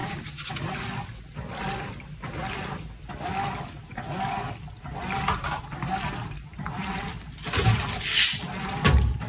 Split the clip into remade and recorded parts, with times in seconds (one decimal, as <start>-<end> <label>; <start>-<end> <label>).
0.0-9.3 recorded